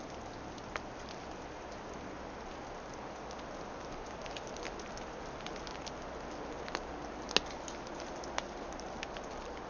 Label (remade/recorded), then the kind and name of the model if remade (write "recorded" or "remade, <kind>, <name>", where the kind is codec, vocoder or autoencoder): recorded